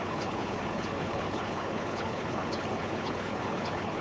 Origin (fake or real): fake